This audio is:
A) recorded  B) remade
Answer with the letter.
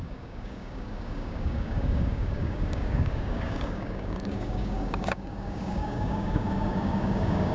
B